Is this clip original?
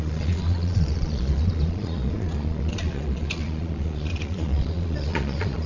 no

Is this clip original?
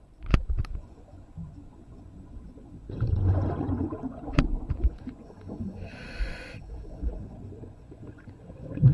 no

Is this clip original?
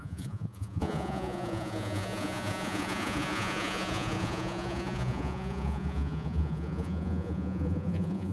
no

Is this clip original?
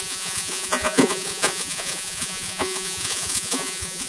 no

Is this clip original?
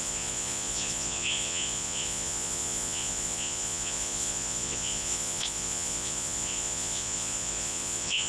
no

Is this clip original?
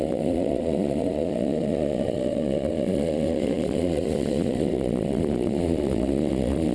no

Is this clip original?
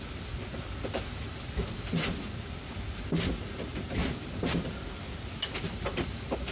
yes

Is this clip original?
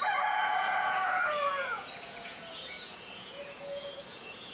no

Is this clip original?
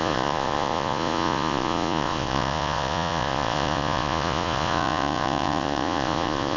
no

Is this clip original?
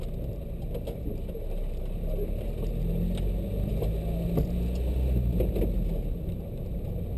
yes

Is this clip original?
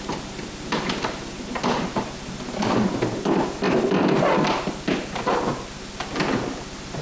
yes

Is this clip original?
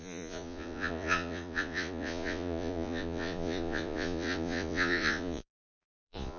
no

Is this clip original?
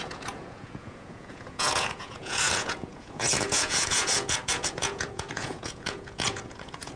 no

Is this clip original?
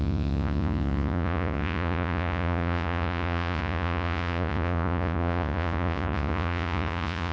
no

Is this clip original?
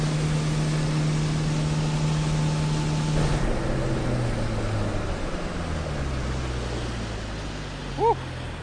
yes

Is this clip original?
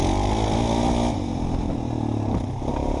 yes